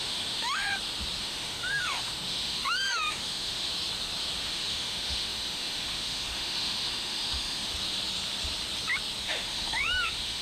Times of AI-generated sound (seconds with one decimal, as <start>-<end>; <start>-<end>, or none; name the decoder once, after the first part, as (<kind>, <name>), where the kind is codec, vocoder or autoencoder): 0.0-0.7 (autoencoder, DAC-VAE); 1.2-3.7; 4.4-7.7; 9.2-10.4